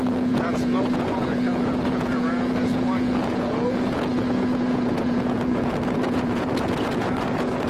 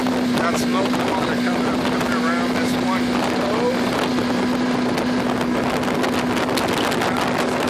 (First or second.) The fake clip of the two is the first